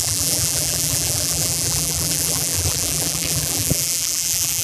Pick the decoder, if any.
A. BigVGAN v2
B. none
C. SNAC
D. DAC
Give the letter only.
A